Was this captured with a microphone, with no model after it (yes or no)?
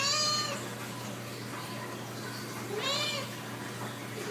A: yes